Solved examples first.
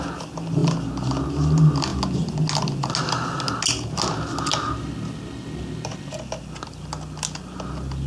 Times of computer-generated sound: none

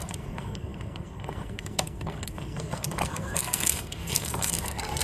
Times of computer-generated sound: 0.0-5.0 (codec, SNAC)